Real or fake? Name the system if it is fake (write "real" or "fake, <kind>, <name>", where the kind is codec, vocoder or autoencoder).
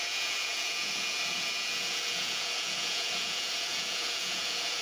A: fake, vocoder, Vocos